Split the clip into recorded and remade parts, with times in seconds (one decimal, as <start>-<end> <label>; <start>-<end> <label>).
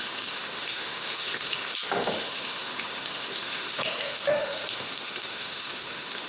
0.0-6.3 remade